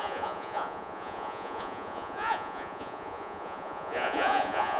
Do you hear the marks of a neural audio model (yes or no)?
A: yes